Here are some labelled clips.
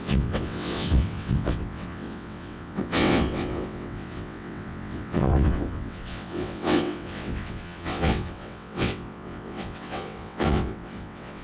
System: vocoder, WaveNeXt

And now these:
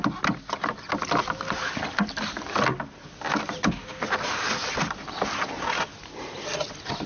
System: none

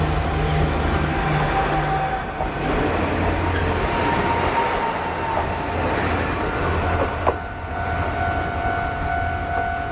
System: none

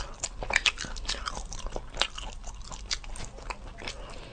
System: none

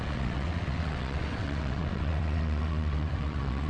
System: vocoder, WaveNeXt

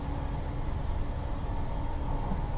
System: none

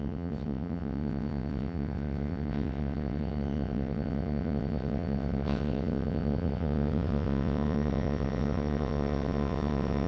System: vocoder, WaveNeXt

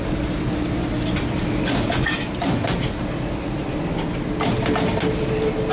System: none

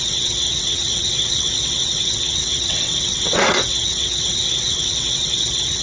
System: vocoder, WaveNeXt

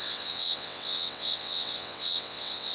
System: vocoder, WaveNeXt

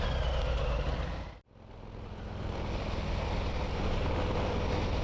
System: none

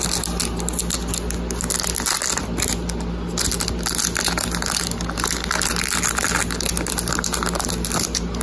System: none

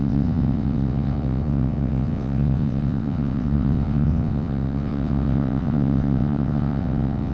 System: vocoder, WaveNeXt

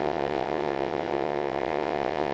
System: vocoder, WaveNeXt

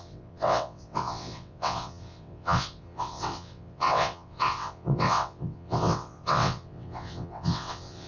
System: vocoder, WaveNeXt